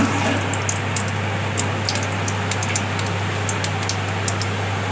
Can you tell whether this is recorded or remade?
recorded